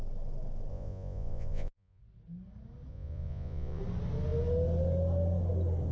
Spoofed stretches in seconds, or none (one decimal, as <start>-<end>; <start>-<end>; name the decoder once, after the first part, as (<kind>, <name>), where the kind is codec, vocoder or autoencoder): 0.7-2.0 (vocoder, Vocos); 2.9-3.8